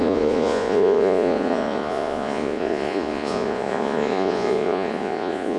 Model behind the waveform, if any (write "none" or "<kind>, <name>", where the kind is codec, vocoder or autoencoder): vocoder, Vocos